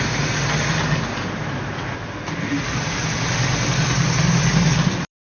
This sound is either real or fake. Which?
real